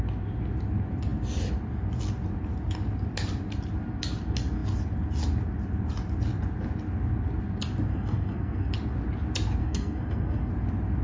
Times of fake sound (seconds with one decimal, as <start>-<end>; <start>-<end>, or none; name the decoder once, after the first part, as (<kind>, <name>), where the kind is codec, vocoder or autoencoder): 7.9-8.7 (codec, SNAC); 9.6-10.5